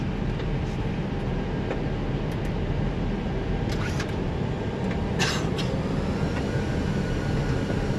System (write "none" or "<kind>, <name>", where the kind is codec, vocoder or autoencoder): none